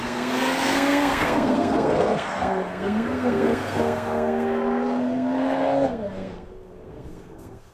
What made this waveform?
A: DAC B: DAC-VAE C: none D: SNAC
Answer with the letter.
D